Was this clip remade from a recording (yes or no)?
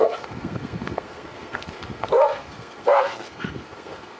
yes